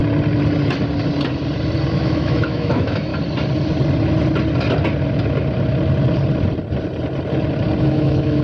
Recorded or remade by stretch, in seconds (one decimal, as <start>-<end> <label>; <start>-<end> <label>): 0.0-1.9 recorded; 1.9-3.1 remade; 3.1-7.8 recorded; 7.8-8.4 remade